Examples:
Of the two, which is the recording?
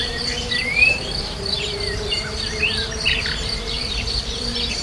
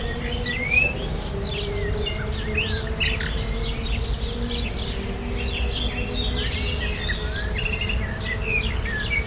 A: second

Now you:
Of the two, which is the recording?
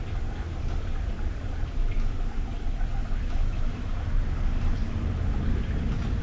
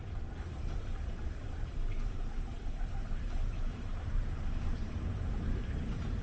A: first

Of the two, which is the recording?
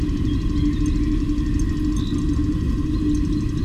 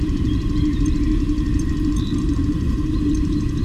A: first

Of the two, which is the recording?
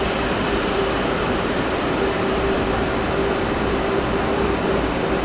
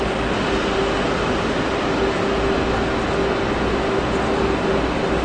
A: second